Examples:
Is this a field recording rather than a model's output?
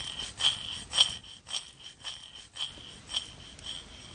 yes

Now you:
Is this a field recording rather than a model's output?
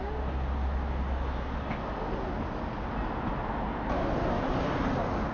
yes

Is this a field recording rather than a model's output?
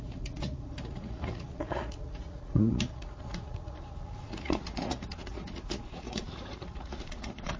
no